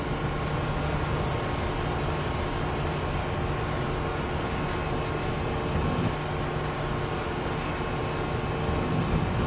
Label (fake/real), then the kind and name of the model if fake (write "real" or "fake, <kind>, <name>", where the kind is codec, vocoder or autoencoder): real